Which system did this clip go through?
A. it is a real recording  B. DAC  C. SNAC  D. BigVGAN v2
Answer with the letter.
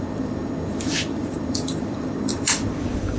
D